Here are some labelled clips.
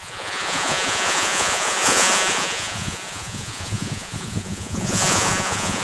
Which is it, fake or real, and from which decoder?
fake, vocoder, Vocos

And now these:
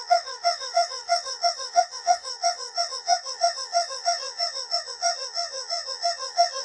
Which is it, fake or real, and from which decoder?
fake, vocoder, Vocos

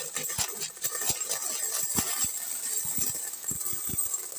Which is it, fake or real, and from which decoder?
real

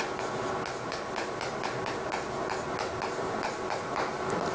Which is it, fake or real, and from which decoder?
real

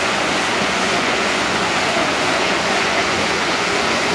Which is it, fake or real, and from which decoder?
fake, vocoder, Vocos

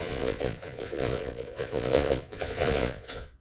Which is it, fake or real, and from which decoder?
fake, vocoder, Vocos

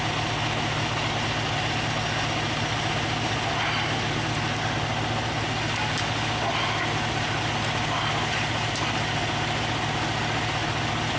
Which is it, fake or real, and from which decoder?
real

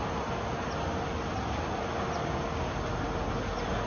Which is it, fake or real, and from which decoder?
real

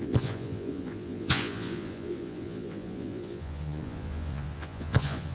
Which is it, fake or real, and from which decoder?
fake, vocoder, Vocos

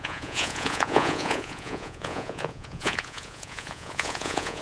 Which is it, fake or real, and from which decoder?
fake, vocoder, Vocos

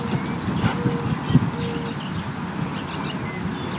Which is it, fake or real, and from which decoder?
real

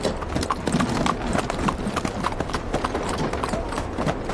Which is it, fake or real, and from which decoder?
real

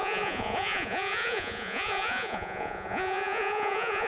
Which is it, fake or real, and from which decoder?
fake, vocoder, Vocos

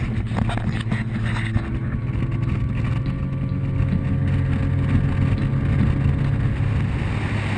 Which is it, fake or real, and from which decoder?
real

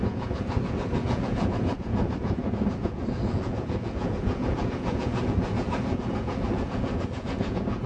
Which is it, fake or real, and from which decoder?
fake, vocoder, Vocos